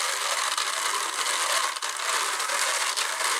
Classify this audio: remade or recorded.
recorded